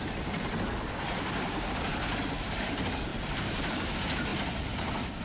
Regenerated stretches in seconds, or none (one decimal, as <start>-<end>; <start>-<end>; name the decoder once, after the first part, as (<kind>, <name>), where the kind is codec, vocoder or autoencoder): none